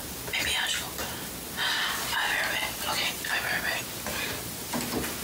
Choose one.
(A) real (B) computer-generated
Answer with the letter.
A